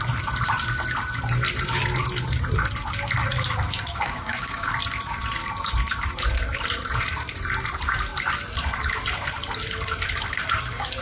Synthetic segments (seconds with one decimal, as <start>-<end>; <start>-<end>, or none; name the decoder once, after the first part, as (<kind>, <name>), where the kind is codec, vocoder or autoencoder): 3.9-4.7 (codec, DAC)